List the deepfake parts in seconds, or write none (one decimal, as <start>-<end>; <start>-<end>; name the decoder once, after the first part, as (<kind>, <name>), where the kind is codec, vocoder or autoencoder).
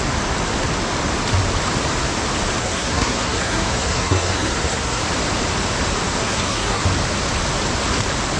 2.6-5.0 (codec, SNAC); 6.2-6.8